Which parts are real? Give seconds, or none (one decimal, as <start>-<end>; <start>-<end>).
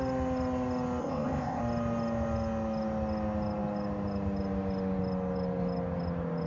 0.0-1.0; 1.6-6.5